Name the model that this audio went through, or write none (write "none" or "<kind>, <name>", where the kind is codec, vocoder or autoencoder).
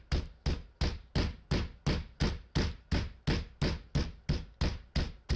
none